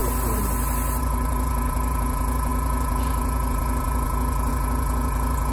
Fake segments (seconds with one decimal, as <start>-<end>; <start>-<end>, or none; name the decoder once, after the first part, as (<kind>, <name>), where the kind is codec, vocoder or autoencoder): 1.0-5.5 (vocoder, Vocos)